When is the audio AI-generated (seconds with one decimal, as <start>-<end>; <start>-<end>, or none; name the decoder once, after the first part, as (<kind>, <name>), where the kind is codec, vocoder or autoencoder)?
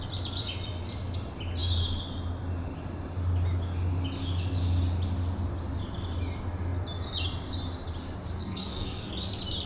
8.4-9.1 (codec, SNAC)